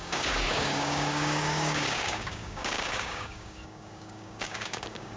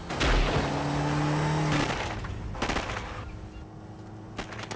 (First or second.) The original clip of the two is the second